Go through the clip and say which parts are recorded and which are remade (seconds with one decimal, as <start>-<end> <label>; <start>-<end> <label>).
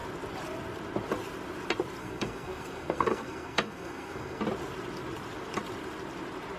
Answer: 0.0-2.0 recorded; 2.0-4.4 remade; 4.4-6.6 recorded